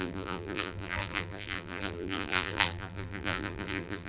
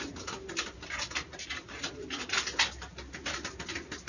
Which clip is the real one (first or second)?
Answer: second